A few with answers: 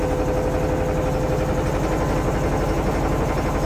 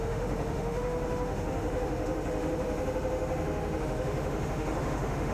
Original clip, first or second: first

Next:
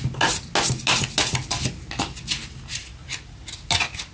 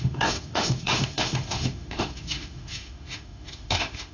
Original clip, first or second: first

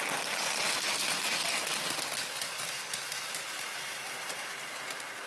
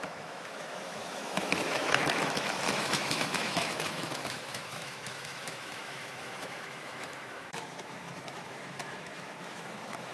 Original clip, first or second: first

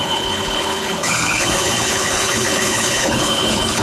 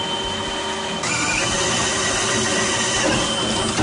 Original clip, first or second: second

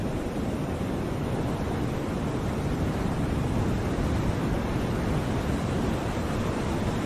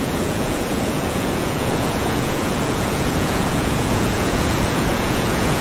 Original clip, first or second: first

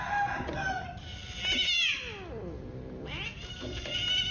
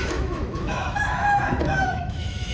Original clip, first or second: first